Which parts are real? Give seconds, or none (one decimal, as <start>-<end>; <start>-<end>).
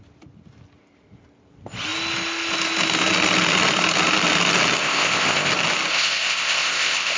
0.0-4.8; 5.5-5.9